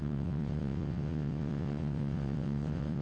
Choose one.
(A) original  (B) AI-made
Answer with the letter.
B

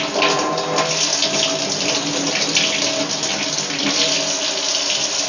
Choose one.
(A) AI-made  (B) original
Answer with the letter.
B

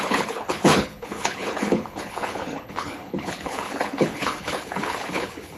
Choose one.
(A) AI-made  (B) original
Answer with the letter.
A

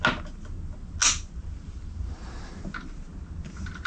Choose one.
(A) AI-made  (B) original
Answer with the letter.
B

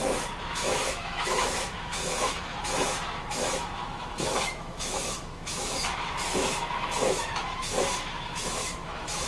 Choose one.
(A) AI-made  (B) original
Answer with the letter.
A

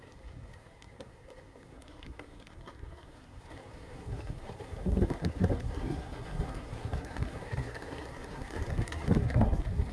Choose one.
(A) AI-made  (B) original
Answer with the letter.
A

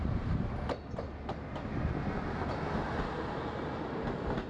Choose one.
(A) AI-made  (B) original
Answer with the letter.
B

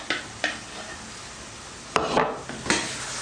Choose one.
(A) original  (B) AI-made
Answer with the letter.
A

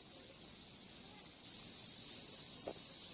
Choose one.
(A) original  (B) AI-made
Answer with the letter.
A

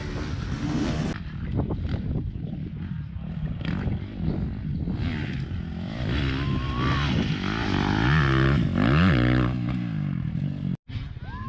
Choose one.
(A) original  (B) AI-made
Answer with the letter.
A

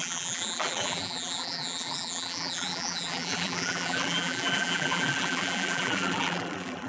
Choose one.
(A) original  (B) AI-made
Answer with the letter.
B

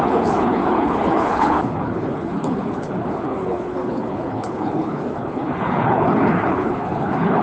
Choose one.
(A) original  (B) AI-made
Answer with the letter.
B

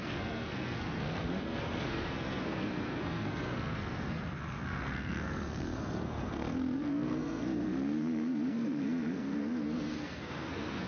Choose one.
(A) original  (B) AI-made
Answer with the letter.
B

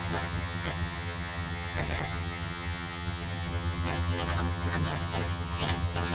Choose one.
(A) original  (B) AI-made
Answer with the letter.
B